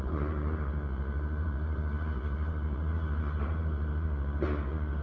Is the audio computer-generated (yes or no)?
yes